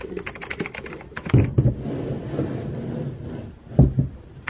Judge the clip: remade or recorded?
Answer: recorded